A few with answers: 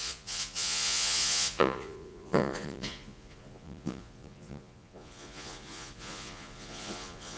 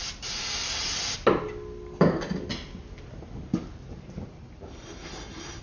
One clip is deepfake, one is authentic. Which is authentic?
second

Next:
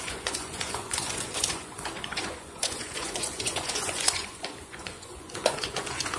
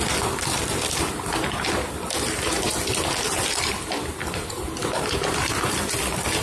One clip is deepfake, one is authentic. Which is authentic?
second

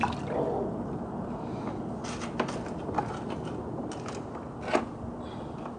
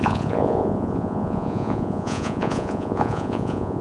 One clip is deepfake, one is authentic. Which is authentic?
first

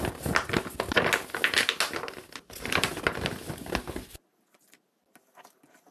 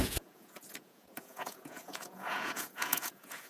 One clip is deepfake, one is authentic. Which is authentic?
first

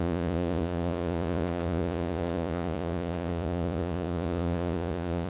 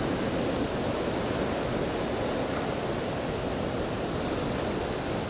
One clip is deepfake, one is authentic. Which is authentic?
second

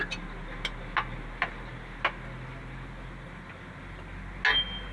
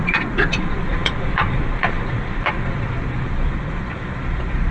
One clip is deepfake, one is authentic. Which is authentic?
first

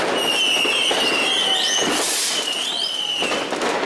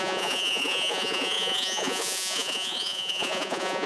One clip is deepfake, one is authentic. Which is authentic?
first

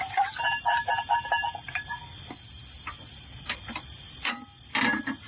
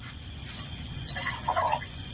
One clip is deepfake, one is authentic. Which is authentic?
first